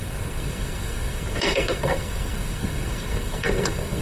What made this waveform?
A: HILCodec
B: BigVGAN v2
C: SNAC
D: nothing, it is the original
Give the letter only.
C